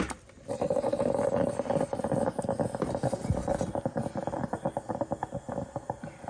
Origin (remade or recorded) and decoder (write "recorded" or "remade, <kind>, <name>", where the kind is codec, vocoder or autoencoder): recorded